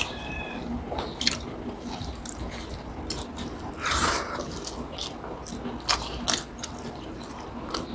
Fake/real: real